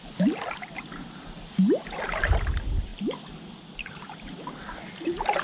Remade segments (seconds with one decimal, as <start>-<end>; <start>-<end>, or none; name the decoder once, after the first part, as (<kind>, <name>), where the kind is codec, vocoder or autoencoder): none